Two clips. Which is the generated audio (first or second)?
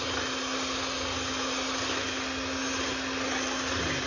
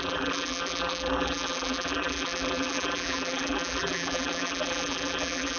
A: second